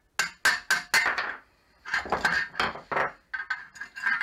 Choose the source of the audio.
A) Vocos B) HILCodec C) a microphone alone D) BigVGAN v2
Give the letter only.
C